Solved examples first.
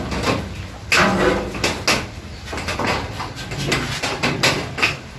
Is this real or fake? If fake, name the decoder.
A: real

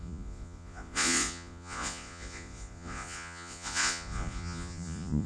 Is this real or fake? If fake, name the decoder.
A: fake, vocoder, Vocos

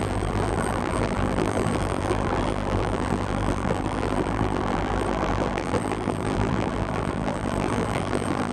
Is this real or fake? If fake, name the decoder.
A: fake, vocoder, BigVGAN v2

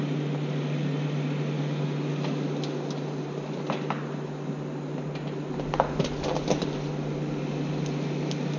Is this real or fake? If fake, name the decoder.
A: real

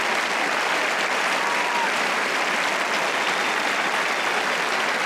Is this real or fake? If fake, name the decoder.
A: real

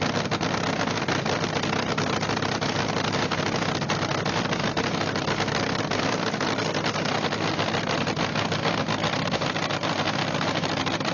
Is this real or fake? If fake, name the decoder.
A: real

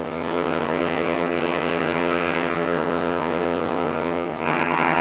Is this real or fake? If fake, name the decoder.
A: fake, vocoder, HiFi-GAN